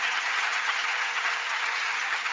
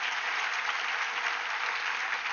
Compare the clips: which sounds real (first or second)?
second